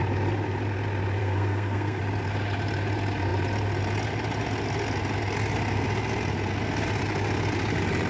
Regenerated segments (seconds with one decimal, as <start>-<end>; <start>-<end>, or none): 1.2-2.0

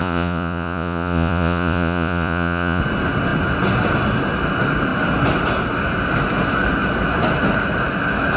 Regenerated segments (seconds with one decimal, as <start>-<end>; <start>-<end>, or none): 0.0-2.8